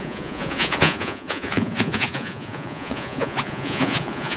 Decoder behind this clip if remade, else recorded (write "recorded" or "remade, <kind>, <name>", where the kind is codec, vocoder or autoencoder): remade, vocoder, Vocos